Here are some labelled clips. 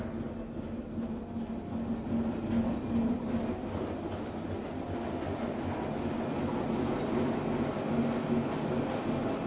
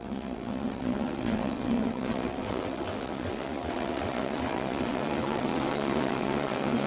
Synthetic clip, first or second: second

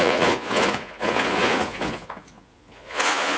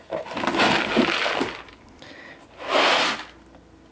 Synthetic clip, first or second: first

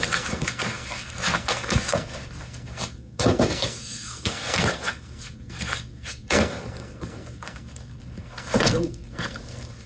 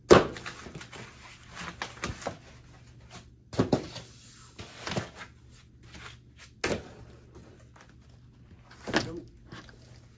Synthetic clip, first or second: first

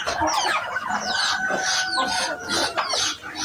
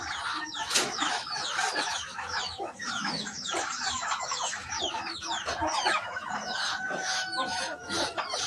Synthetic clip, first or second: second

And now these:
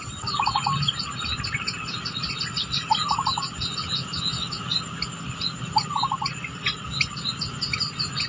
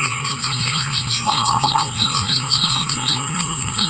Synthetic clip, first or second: second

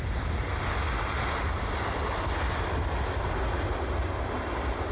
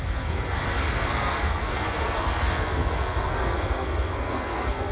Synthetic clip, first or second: second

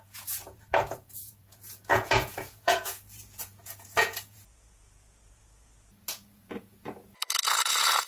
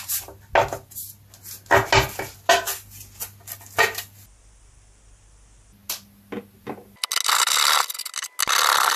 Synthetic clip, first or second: first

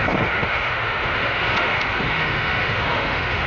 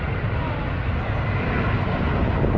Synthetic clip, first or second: first